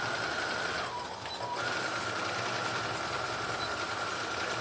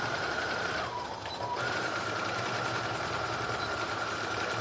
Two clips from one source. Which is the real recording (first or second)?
first